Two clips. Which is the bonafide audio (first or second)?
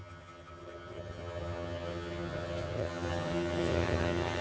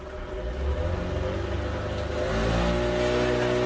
second